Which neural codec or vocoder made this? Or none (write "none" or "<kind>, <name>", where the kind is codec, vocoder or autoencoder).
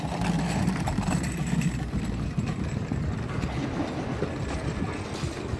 none